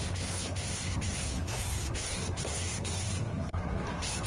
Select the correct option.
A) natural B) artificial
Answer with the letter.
B